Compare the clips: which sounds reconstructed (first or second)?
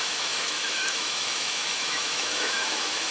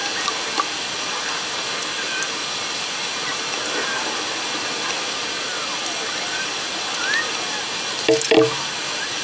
first